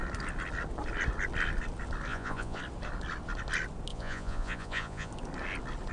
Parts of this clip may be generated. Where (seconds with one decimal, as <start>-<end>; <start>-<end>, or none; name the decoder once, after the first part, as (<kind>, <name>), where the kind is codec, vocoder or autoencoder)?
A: 2.1-2.6 (vocoder, Vocos); 3.9-5.1